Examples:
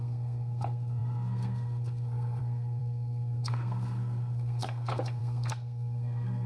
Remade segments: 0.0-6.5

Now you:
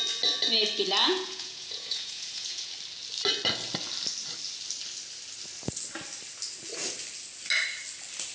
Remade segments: 1.0-2.7

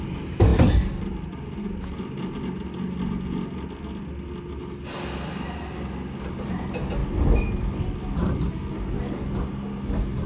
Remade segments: none